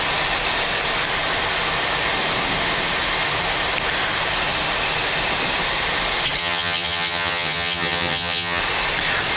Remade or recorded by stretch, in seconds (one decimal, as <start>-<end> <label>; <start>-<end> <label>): 0.0-6.4 recorded; 6.4-8.6 remade; 8.6-9.4 recorded